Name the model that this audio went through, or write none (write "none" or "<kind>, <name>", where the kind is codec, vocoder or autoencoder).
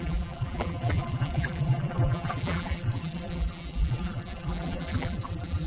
vocoder, BigVGAN v2